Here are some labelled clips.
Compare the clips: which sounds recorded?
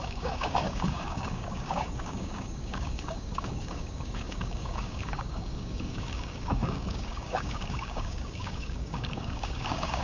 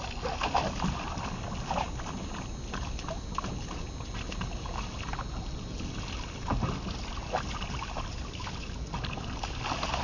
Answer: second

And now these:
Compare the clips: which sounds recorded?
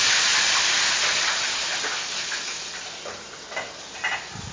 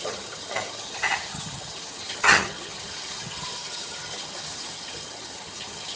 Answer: first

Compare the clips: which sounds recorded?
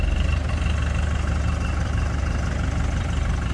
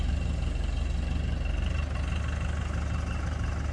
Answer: second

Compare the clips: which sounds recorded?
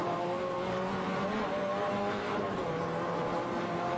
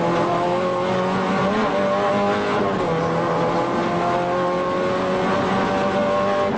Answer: second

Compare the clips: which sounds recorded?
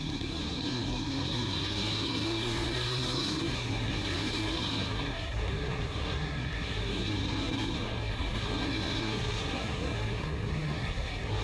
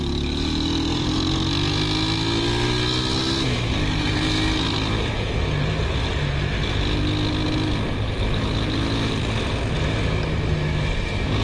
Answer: second